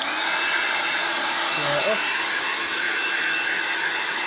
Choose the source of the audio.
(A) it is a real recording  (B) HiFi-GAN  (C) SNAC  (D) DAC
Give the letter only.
A